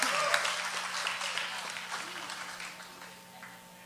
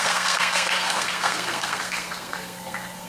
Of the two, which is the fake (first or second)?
second